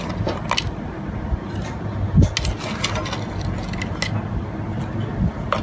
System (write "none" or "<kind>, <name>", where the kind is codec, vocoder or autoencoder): none